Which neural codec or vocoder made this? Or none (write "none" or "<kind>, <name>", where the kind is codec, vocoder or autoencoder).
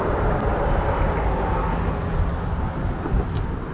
none